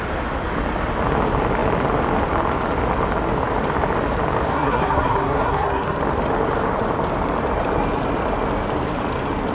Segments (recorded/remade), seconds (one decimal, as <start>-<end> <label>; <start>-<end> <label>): 0.0-4.5 recorded; 4.5-6.0 remade; 6.0-9.5 recorded